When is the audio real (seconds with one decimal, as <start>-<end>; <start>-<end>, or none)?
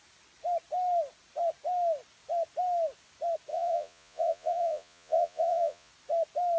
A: 0.0-3.5; 5.9-6.6